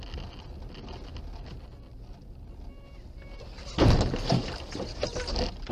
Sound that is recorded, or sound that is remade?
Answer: recorded